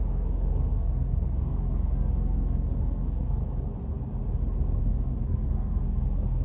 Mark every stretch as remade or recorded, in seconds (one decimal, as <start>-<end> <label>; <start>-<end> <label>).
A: 0.0-3.4 remade; 3.4-4.8 recorded; 4.8-6.4 remade